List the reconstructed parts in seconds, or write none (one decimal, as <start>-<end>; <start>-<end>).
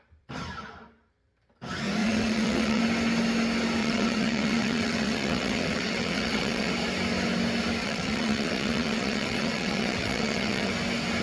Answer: 2.0-2.8; 3.8-6.7; 7.8-10.7